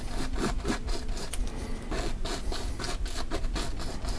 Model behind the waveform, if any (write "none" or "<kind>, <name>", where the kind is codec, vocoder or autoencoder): none